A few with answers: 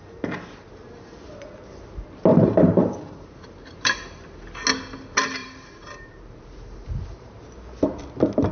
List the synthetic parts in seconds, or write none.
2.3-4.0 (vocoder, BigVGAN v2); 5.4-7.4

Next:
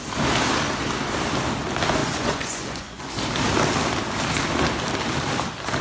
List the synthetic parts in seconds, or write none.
2.0-3.1 (vocoder, Vocos)

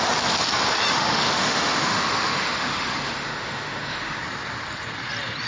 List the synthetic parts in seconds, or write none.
0.9-4.2 (autoencoder, DAC-VAE)

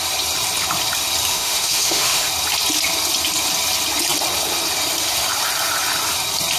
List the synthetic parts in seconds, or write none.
1.3-2.3 (autoencoder, DAC-VAE)